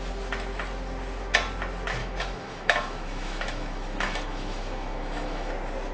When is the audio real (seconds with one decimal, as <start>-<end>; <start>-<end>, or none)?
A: 0.0-2.0; 5.5-5.9